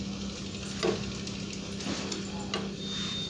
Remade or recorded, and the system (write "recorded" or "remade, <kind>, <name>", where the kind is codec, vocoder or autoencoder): recorded